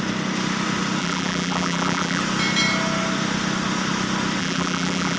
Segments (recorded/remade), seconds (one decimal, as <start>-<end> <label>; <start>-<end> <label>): 0.0-1.0 recorded; 1.0-2.2 remade; 2.2-4.4 recorded; 4.4-5.2 remade

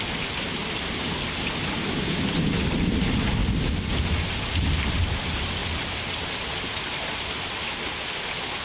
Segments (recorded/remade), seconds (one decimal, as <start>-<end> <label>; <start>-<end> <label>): 0.0-0.6 remade; 0.6-1.6 recorded; 1.6-3.4 remade; 3.4-4.7 recorded; 4.7-5.6 remade; 5.6-8.6 recorded

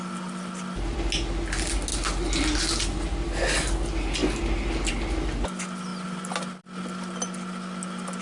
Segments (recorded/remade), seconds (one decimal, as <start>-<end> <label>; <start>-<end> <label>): 0.0-8.2 recorded